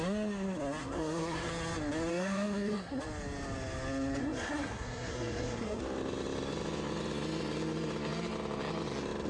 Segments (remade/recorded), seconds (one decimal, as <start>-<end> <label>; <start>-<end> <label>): 0.0-0.8 recorded; 0.8-1.5 remade; 1.5-2.1 recorded; 2.1-3.0 remade; 3.0-4.2 recorded; 4.2-5.8 remade; 5.8-9.3 recorded